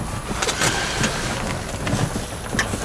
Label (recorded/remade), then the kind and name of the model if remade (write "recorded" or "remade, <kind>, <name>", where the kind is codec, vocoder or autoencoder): recorded